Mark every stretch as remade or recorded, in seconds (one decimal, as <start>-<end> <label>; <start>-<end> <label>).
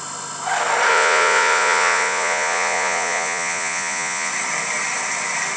0.0-0.9 recorded; 0.9-4.3 remade; 4.3-5.6 recorded